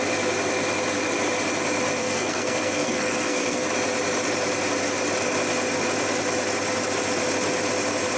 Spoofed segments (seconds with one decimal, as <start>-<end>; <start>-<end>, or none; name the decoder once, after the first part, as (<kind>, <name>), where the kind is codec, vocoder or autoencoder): 2.0-3.7 (codec, SNAC)